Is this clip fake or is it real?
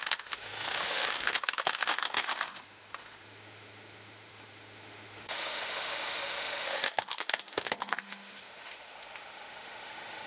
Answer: fake